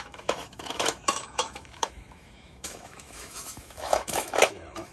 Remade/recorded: remade